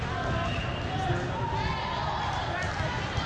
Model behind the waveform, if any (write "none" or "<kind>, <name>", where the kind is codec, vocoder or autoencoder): none